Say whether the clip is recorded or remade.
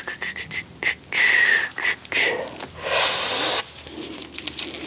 recorded